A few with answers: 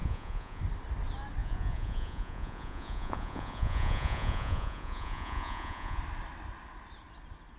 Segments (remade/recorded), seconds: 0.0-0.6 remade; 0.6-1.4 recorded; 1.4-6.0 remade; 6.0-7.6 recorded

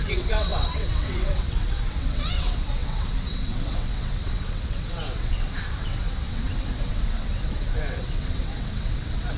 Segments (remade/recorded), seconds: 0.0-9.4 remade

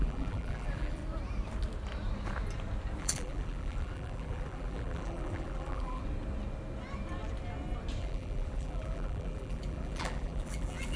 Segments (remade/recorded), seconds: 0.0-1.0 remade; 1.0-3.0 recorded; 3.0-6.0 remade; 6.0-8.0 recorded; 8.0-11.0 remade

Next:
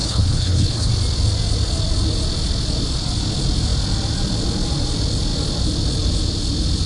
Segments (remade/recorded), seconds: 0.0-0.9 remade; 0.9-6.9 recorded

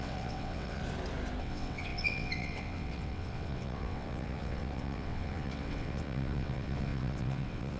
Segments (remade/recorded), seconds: 0.0-0.8 remade; 0.8-1.4 recorded; 1.4-7.8 remade